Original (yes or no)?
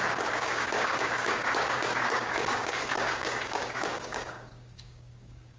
no